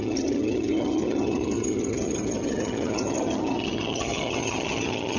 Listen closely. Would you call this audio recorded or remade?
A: remade